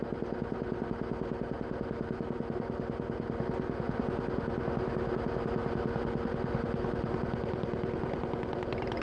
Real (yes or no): yes